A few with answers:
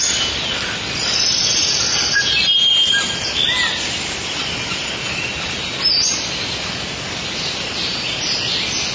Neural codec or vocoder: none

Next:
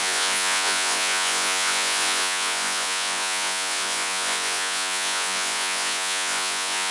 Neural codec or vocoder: vocoder, Vocos